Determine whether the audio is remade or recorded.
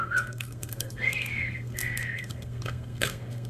remade